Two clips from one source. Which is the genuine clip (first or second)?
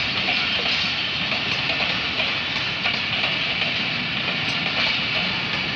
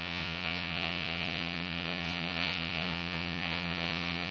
first